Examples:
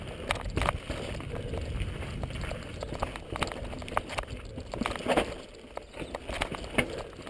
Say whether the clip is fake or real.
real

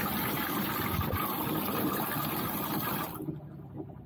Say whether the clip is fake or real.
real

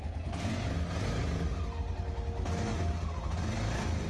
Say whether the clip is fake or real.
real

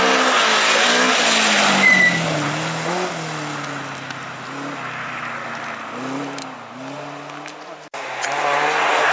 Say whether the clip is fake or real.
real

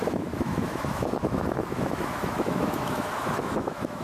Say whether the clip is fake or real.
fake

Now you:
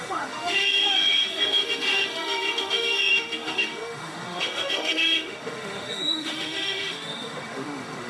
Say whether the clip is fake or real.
fake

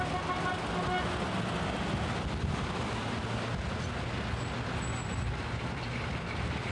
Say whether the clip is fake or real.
real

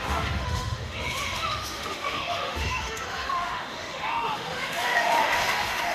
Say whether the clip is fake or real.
fake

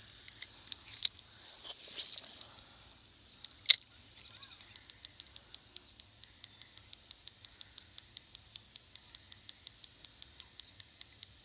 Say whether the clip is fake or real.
real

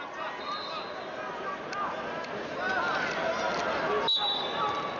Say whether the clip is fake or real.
real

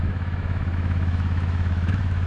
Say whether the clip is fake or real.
fake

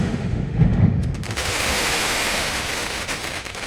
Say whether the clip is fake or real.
fake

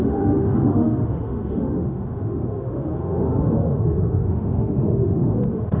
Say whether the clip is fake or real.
fake